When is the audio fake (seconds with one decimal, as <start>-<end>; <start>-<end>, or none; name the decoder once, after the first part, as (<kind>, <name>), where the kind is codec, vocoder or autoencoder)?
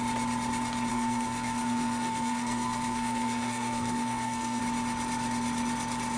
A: 0.9-4.6 (codec, SNAC)